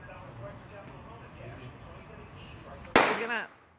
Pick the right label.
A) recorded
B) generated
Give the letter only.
A